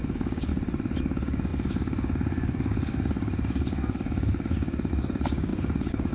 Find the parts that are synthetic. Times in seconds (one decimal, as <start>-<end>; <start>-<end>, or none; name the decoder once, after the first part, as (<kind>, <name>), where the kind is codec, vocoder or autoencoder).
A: 0.0-0.5 (codec, DAC); 1.0-6.1